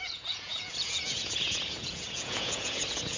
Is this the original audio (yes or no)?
no